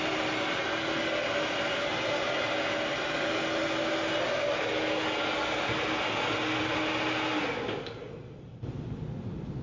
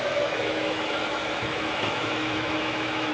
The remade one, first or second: second